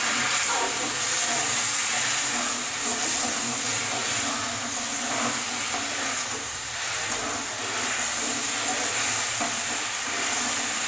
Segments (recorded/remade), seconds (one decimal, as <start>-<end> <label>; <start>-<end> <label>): 0.0-10.9 recorded